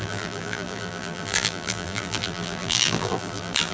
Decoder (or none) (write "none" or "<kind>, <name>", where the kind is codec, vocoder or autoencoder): vocoder, BigVGAN v2